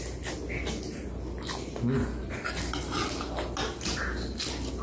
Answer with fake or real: real